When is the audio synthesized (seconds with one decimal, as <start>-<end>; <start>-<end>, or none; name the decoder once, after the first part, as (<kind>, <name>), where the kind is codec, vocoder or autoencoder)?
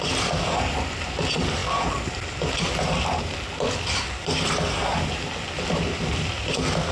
none